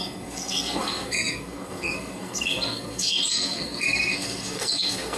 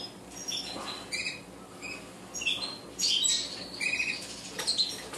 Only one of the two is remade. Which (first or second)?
first